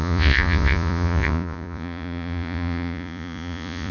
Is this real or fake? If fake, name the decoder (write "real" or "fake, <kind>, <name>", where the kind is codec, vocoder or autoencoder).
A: fake, vocoder, Vocos